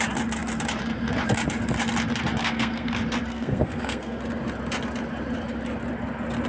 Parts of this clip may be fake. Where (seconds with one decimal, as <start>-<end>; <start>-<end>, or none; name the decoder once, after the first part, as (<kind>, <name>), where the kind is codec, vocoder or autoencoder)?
2.4-2.9 (codec, SNAC); 3.3-4.2